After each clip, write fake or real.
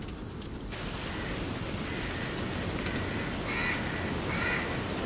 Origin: real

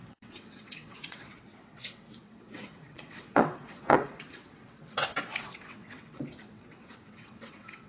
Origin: fake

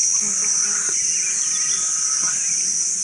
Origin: real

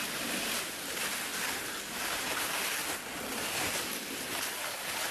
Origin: real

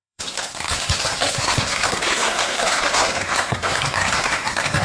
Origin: fake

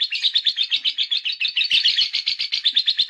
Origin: real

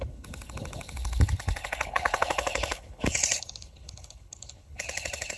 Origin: fake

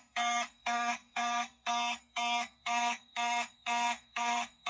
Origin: fake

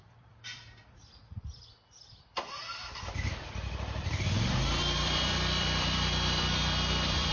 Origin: fake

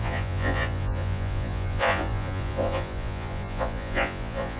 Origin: fake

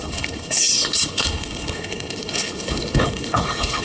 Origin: fake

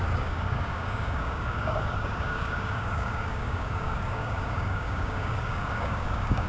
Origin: fake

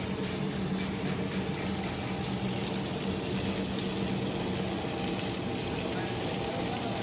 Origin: real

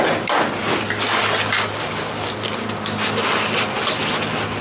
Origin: real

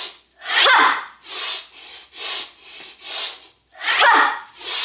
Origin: real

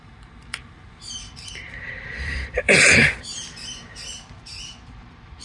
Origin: fake